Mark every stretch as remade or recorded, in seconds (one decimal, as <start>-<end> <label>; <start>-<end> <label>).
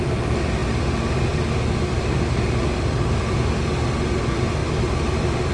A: 0.0-5.5 recorded